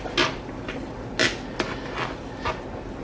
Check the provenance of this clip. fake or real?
real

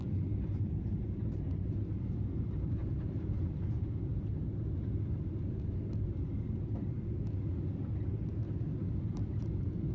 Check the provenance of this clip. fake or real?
real